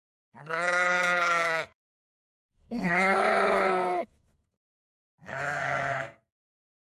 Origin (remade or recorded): remade